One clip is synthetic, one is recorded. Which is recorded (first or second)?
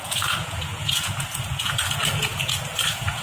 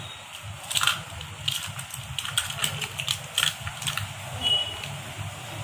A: second